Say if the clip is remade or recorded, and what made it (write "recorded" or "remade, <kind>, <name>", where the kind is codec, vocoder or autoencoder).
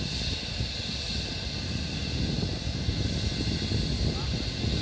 recorded